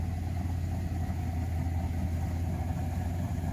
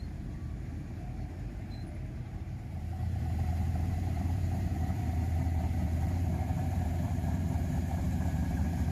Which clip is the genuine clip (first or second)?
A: first